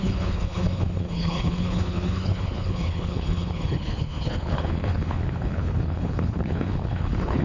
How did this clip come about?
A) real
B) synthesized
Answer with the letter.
B